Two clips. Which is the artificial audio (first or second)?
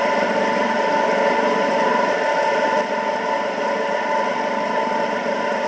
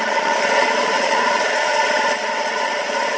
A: second